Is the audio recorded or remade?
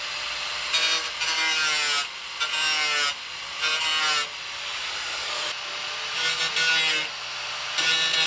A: recorded